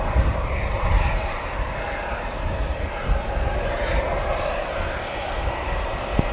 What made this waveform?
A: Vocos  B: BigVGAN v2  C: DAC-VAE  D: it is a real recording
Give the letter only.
B